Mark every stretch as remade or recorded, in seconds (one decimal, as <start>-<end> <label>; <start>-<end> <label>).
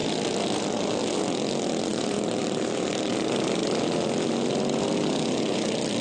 0.0-1.9 recorded; 1.9-3.1 remade; 3.1-6.0 recorded